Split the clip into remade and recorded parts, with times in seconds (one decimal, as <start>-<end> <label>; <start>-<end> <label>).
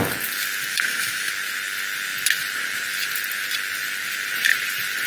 0.0-0.7 recorded; 0.7-1.3 remade; 1.3-5.1 recorded